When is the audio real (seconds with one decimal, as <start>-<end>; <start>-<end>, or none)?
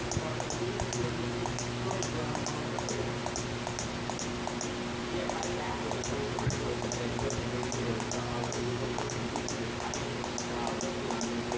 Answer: 0.0-8.4; 9.2-11.6